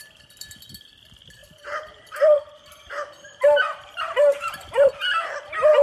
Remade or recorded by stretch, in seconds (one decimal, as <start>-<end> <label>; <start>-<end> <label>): 0.0-1.4 recorded; 1.4-4.9 remade; 4.9-5.8 recorded